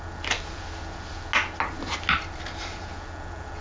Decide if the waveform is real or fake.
real